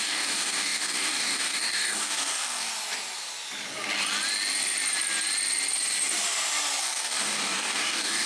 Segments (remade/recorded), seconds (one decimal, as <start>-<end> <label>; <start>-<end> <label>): 0.0-2.7 remade; 2.7-6.8 recorded; 6.8-8.3 remade